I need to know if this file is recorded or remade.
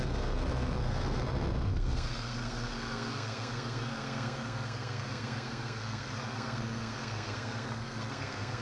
remade